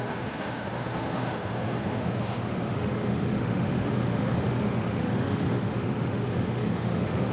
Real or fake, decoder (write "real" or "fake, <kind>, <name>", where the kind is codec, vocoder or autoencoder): fake, autoencoder, DAC-VAE